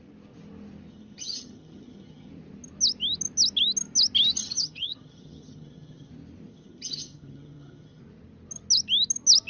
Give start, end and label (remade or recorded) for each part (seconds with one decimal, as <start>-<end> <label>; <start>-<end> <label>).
0.0-0.9 recorded; 0.9-2.3 remade; 2.3-4.4 recorded; 4.4-6.1 remade; 6.1-6.5 recorded; 6.5-8.0 remade; 8.0-9.5 recorded

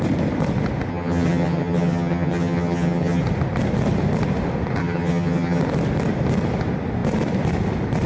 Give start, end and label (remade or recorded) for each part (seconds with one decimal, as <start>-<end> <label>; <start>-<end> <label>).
0.0-0.9 recorded; 0.9-3.2 remade; 3.2-4.8 recorded; 4.8-5.6 remade; 5.6-8.1 recorded

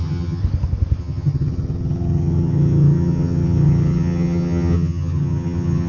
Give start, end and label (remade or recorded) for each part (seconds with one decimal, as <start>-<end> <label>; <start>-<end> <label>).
0.0-0.4 remade; 0.4-1.0 recorded; 1.0-5.9 remade

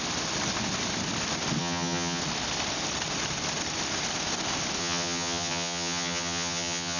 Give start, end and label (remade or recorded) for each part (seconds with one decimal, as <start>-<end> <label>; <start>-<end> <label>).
0.0-1.6 recorded; 1.6-2.2 remade; 2.2-4.8 recorded; 4.8-7.0 remade

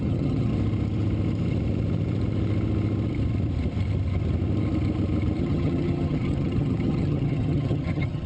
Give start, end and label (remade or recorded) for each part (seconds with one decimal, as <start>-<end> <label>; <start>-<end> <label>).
0.0-0.5 remade; 0.5-5.4 recorded; 5.4-8.3 remade